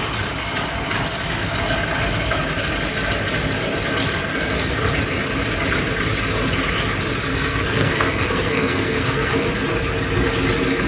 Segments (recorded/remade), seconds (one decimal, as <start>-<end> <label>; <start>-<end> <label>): 0.0-4.2 recorded; 4.2-4.8 remade; 4.8-7.3 recorded; 7.3-9.5 remade; 9.5-10.9 recorded